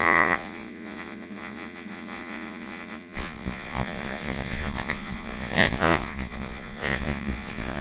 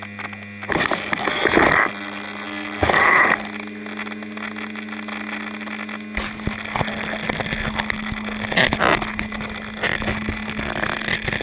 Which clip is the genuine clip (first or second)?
second